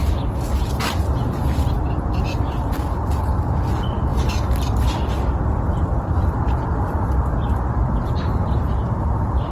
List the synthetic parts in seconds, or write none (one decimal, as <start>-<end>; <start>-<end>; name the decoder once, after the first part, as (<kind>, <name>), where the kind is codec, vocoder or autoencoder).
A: none